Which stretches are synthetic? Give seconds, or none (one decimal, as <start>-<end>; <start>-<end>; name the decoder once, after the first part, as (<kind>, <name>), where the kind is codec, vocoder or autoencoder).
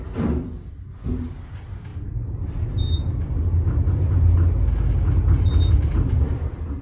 none